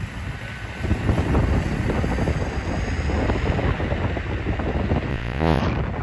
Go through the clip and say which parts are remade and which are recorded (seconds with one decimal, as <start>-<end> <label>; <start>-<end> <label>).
0.0-5.1 recorded; 5.1-5.6 remade; 5.6-6.0 recorded